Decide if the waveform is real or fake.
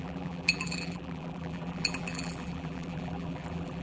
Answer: fake